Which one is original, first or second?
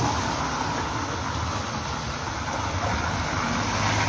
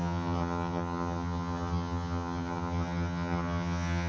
first